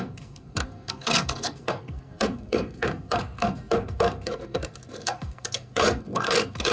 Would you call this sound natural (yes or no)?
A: no